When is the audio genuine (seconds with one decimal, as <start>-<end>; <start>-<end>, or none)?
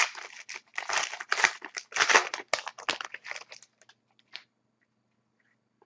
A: 0.0-5.9